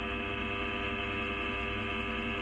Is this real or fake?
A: real